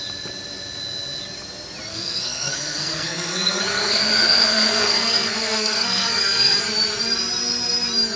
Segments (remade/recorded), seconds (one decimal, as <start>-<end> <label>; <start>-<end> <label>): 0.0-1.9 recorded; 1.9-6.6 remade; 6.6-8.2 recorded